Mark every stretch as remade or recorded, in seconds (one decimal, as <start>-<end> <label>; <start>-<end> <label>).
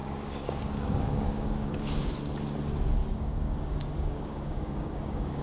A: 0.0-2.1 remade; 2.1-3.0 recorded; 3.0-5.4 remade